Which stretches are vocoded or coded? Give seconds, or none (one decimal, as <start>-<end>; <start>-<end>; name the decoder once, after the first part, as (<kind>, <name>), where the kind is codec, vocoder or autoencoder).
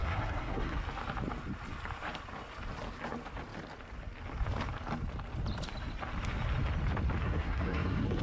0.0-0.8 (codec, SNAC); 7.2-8.2